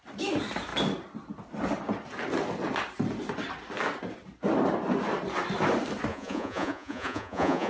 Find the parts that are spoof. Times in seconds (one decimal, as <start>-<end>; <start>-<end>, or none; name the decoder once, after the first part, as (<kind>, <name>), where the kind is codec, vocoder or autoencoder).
6.1-7.7 (vocoder, Vocos)